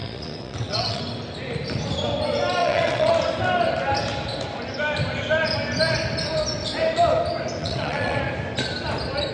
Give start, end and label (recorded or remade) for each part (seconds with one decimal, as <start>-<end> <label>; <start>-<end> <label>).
0.0-1.0 remade; 1.0-2.6 recorded; 2.6-3.1 remade; 3.1-7.6 recorded; 7.6-8.2 remade; 8.2-9.3 recorded